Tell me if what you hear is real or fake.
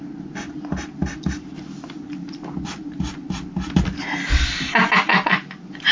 real